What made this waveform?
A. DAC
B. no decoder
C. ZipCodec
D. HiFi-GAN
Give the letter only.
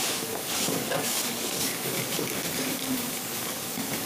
A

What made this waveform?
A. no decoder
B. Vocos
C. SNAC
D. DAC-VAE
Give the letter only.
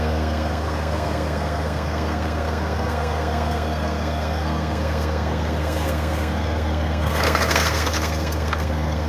C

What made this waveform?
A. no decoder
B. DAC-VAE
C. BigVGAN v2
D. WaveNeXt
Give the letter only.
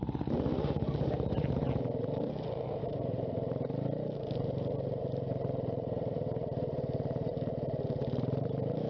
C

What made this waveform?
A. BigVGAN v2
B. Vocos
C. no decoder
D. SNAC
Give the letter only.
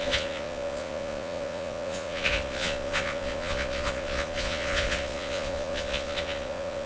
B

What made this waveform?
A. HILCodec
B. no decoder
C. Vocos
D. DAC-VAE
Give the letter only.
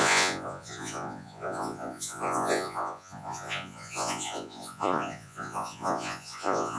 C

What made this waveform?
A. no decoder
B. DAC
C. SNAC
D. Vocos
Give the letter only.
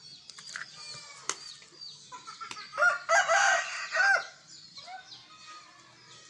A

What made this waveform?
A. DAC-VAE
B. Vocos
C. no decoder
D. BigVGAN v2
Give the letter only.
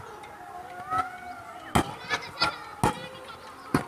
C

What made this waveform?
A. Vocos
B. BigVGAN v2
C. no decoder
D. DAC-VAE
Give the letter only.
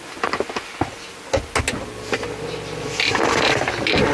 C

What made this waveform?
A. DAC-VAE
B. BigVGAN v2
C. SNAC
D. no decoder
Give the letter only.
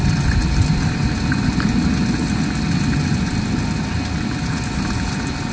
D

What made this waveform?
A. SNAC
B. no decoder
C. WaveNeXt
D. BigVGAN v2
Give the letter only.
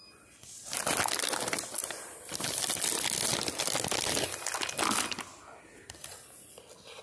B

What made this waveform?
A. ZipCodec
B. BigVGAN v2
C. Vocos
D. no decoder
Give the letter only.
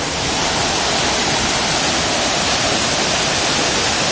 D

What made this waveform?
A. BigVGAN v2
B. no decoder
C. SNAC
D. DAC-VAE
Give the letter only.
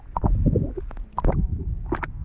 B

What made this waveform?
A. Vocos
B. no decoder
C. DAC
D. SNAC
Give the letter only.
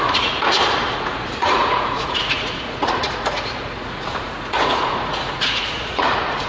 A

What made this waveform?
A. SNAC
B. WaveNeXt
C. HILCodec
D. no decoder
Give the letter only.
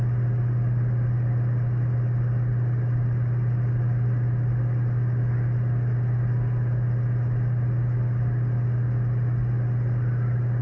D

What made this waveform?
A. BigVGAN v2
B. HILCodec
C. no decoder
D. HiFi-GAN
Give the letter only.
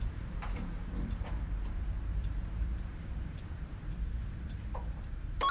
A